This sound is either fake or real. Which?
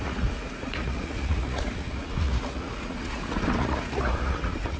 fake